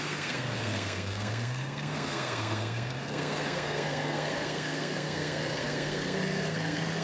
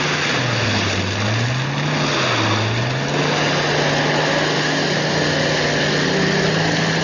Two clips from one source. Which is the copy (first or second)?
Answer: first